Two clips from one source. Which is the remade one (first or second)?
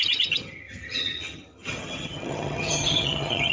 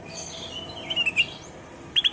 first